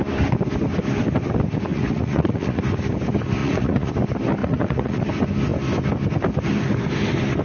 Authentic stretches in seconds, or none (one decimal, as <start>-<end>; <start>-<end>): 0.0-1.7; 2.6-3.4; 3.9-4.4; 5.0-7.4